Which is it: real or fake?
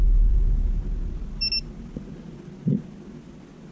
real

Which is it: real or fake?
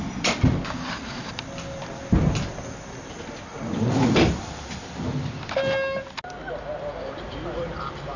real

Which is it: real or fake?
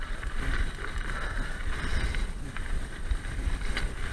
real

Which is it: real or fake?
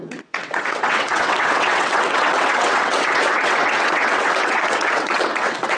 fake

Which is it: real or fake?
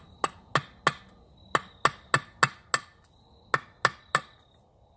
real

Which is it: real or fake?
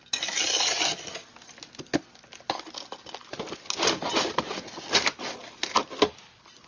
real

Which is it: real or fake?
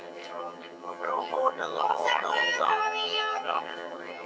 fake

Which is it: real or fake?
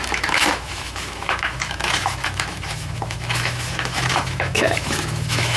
fake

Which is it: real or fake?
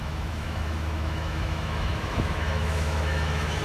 fake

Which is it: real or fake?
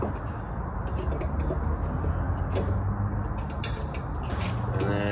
real